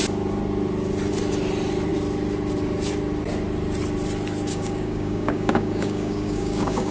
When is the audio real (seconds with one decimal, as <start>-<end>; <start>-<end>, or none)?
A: 0.0-4.5